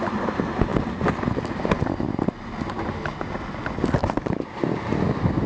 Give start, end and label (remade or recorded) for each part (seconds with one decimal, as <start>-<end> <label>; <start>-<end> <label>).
0.0-5.5 recorded